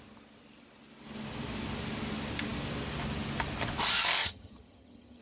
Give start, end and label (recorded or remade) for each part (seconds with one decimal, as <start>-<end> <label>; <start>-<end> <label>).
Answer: 0.0-4.2 recorded; 4.2-5.2 remade